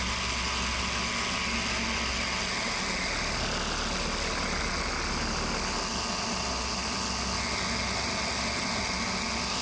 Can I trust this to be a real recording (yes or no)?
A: yes